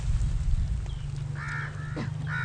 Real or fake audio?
real